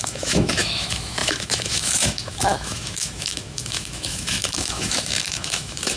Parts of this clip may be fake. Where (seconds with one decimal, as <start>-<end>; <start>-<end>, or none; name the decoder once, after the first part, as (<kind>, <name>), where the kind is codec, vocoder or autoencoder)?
0.0-6.0 (autoencoder, DAC-VAE)